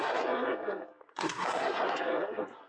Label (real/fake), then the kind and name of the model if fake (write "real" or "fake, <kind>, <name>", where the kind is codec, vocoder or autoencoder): fake, codec, SNAC